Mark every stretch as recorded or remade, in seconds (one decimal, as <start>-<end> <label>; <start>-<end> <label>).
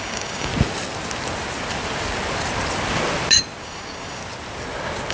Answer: 0.0-0.5 remade; 0.5-3.6 recorded; 3.6-4.2 remade; 4.2-5.1 recorded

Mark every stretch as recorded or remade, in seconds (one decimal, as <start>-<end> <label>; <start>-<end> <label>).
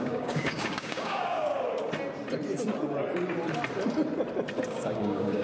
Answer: 0.0-1.5 remade; 1.5-4.7 recorded; 4.7-5.4 remade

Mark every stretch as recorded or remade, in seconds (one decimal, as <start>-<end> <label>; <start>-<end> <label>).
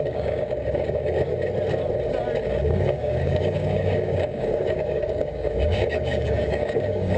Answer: 0.0-1.3 remade; 1.3-2.4 recorded; 2.4-7.2 remade